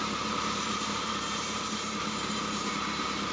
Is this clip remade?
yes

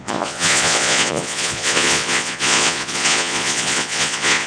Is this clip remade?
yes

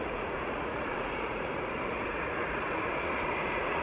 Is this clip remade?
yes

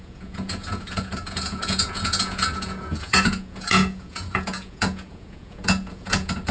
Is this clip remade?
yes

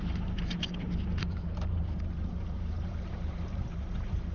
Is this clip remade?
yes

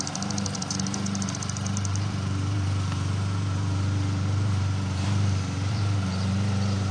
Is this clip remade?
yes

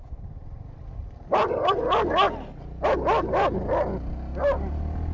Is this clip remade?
no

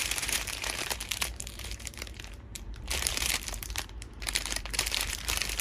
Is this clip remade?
yes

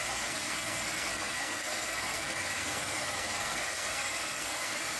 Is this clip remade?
yes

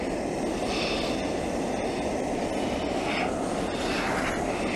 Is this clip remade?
no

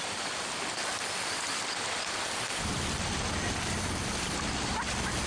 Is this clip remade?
no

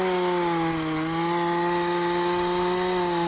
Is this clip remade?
no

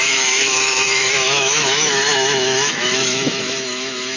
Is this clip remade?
yes